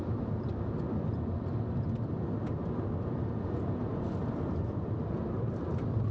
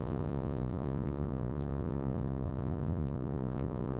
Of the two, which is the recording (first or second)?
first